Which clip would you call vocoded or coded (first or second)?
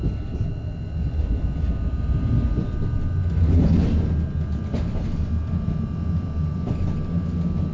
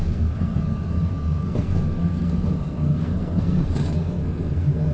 second